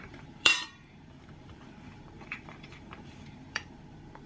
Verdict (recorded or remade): remade